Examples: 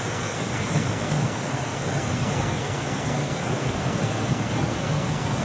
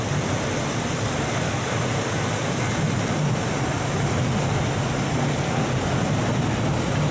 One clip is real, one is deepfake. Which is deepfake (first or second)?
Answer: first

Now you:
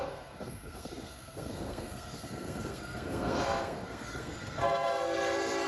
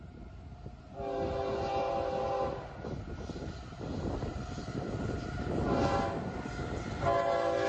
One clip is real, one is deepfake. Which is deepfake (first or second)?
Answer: first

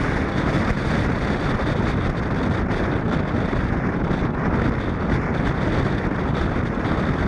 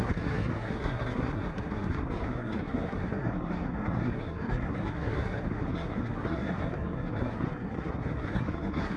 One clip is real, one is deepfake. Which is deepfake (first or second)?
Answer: second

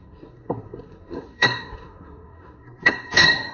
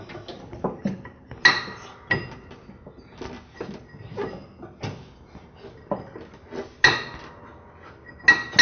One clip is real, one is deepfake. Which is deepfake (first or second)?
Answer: first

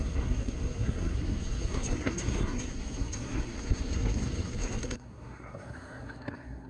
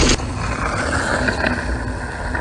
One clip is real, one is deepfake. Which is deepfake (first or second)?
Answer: first